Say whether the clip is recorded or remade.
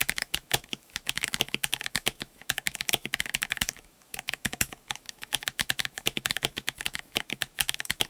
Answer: remade